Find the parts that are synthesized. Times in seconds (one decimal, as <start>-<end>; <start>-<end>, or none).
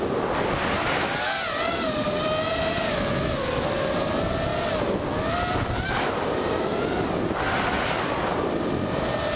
none